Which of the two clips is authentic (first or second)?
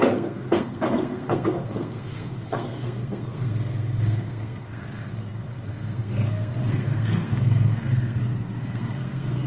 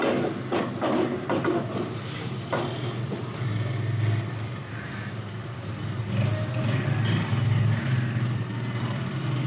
second